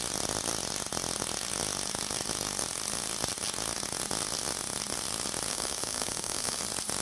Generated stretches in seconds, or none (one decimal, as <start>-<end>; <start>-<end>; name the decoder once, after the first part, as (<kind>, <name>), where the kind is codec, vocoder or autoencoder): 5.5-6.6 (autoencoder, DAC-VAE)